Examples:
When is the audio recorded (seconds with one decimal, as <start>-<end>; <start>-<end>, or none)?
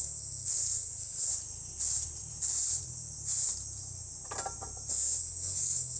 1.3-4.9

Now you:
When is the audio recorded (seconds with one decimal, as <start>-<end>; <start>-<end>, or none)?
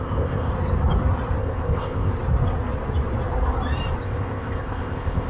0.5-1.4; 2.1-4.0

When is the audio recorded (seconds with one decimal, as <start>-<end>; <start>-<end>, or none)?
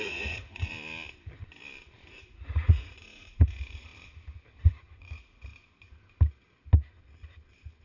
0.7-2.1; 3.9-5.0; 5.5-7.8